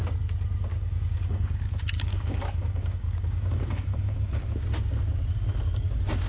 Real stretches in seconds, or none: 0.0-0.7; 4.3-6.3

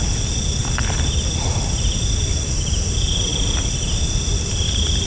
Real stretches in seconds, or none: 0.0-5.1

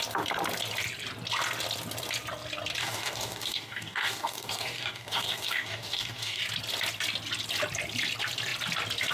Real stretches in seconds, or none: 0.0-2.8; 6.4-9.1

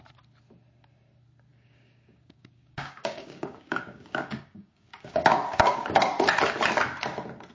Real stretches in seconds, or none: 0.0-1.5; 6.0-7.5

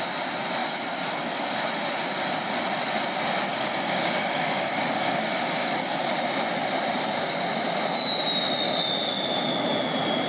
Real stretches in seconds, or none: 0.0-0.6; 1.6-3.5; 6.1-10.3

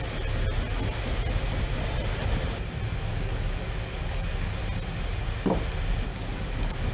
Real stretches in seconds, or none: 0.0-3.1; 4.6-6.1

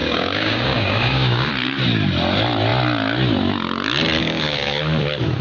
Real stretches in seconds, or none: 1.5-4.2; 4.8-5.4